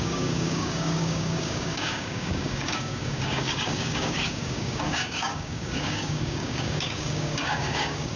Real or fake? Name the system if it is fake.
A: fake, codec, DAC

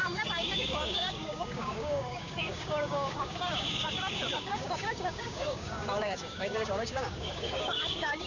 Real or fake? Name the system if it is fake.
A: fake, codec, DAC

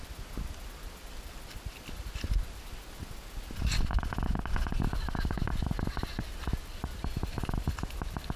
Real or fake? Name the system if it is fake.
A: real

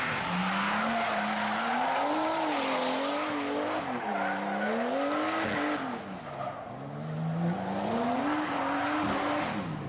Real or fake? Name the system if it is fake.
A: real